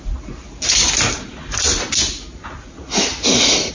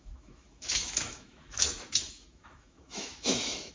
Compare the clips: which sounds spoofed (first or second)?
second